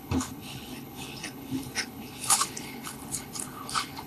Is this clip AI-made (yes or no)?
yes